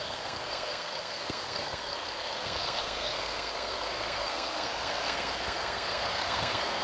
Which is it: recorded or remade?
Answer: remade